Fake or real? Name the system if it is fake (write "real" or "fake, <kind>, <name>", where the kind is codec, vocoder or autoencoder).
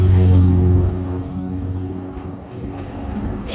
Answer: fake, codec, DAC